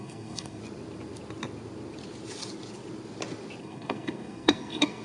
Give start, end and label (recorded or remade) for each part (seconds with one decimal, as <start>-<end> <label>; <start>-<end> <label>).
0.0-0.6 remade; 0.6-3.6 recorded; 3.6-5.0 remade